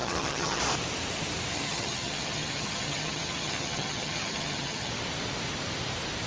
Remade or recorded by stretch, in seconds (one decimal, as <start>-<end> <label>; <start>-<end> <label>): 0.0-0.6 remade; 0.6-1.5 recorded; 1.5-4.9 remade; 4.9-6.3 recorded